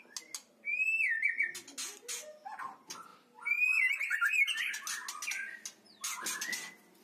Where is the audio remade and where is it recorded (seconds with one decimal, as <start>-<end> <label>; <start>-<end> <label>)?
0.0-7.0 recorded